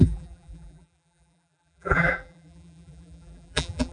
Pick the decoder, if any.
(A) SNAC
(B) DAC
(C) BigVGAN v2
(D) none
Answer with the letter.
C